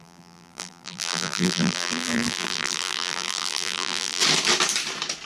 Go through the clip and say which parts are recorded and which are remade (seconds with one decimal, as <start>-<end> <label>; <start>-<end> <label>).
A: 0.0-4.2 remade; 4.2-5.3 recorded